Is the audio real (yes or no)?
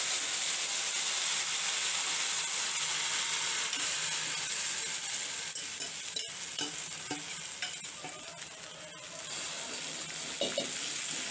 yes